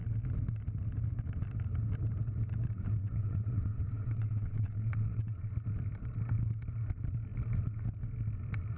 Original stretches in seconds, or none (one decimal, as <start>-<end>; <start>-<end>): 0.0-3.0; 5.5-8.8